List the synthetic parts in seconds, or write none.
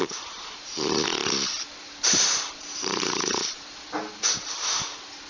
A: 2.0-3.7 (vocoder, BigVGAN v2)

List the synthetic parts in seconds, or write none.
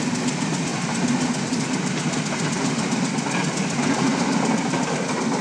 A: none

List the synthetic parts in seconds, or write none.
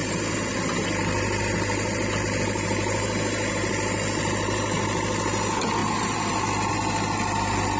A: none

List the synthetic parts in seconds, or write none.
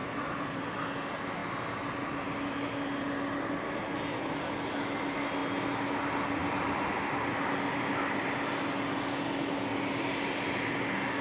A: 0.0-0.6 (vocoder, BigVGAN v2); 6.4-6.9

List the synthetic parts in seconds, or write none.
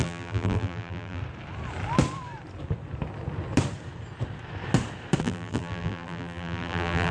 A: 0.0-1.2 (vocoder, BigVGAN v2); 5.2-7.1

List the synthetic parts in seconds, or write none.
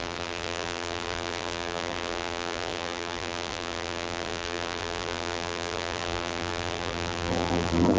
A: 0.0-8.0 (vocoder, BigVGAN v2)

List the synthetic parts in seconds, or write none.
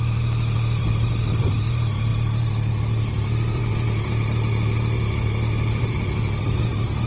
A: 0.0-7.1 (vocoder, BigVGAN v2)